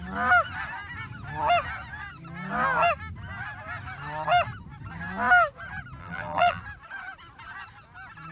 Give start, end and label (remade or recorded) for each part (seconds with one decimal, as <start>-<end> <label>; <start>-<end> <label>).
0.0-6.0 recorded; 6.0-6.6 remade; 6.6-8.3 recorded